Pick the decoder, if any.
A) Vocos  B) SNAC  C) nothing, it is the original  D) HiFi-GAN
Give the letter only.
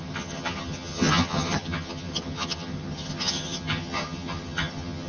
D